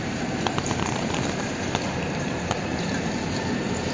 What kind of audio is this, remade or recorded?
remade